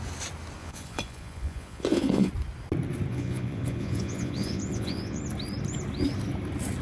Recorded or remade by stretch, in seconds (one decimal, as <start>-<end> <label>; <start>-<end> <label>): 0.0-0.6 recorded; 0.6-2.3 remade; 2.3-3.1 recorded; 3.1-5.2 remade; 5.2-6.8 recorded